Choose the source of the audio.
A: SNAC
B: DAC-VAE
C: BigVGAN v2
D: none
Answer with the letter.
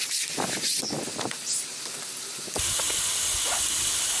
D